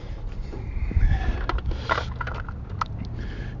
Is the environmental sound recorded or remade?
recorded